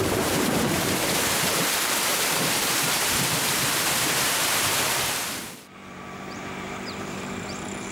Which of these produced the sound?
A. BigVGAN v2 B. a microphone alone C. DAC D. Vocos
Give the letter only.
A